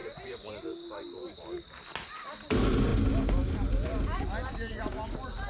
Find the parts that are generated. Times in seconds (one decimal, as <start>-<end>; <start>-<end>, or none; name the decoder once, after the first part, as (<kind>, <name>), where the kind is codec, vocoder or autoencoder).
0.0-0.5 (vocoder, Vocos)